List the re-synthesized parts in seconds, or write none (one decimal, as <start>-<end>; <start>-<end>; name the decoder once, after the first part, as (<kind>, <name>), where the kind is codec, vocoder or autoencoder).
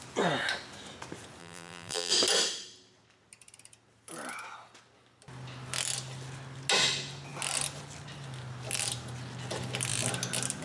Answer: 1.4-2.1 (vocoder, BigVGAN v2)